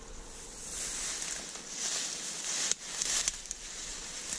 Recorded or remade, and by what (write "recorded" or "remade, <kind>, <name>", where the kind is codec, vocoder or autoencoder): recorded